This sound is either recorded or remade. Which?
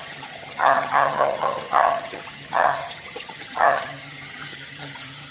remade